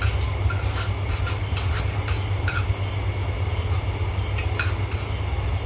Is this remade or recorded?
recorded